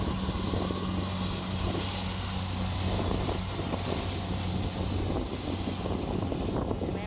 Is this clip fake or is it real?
real